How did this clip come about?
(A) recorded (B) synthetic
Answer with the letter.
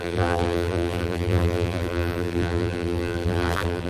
B